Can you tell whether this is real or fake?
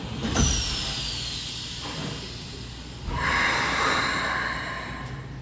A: real